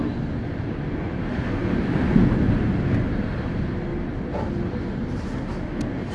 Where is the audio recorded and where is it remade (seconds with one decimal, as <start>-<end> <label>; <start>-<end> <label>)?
0.0-6.1 recorded